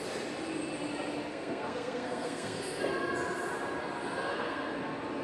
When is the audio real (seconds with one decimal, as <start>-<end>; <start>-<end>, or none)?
0.0-1.3; 2.8-4.3; 4.8-5.2